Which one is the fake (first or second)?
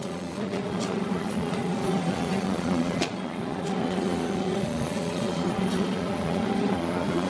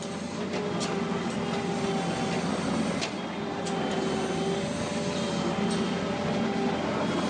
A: first